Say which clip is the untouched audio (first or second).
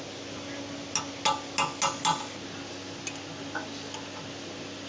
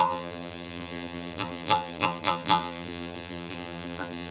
first